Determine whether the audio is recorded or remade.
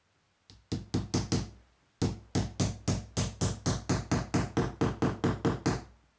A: recorded